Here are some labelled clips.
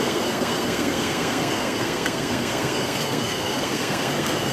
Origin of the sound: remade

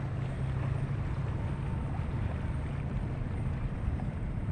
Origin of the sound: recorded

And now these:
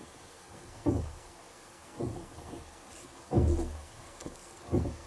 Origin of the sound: remade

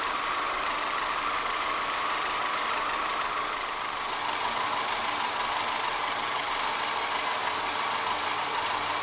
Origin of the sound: recorded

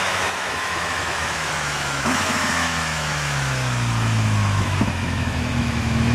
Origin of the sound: remade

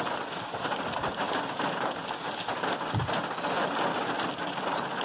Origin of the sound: recorded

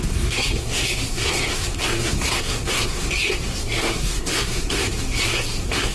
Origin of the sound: remade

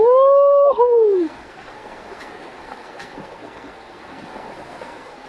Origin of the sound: remade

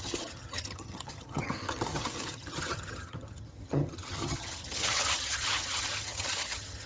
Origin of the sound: remade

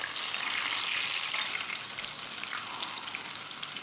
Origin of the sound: recorded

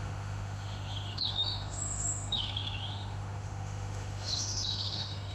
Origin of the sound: remade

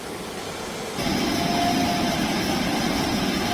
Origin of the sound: recorded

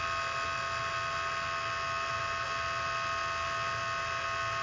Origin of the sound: recorded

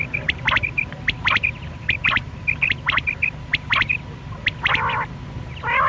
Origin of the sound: recorded